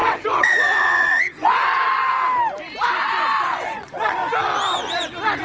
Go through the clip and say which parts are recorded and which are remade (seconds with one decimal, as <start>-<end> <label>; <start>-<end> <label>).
0.0-1.8 remade; 1.8-3.5 recorded; 3.5-4.2 remade; 4.2-5.4 recorded